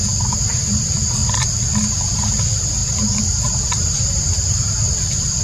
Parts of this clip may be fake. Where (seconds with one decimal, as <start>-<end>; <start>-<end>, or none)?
2.8-4.2

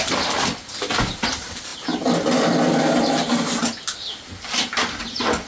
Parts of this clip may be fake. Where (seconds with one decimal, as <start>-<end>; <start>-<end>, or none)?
none

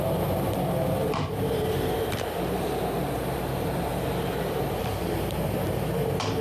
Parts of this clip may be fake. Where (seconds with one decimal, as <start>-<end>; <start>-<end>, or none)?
1.0-4.8

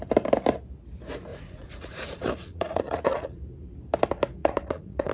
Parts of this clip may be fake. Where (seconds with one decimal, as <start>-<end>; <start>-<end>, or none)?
1.3-3.4; 4.4-5.1